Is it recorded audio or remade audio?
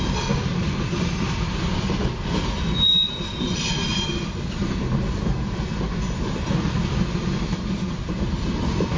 recorded